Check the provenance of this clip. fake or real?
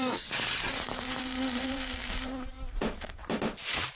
fake